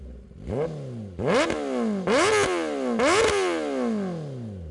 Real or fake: real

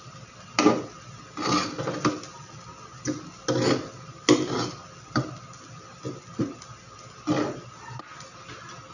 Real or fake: real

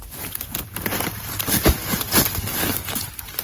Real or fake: real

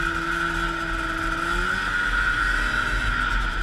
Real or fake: real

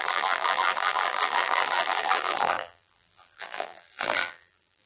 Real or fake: fake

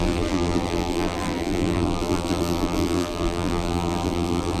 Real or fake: fake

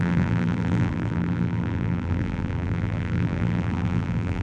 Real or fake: fake